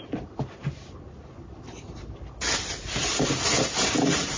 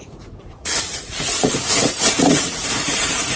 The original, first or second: first